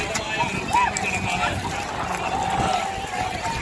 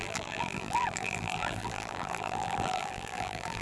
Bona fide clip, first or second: first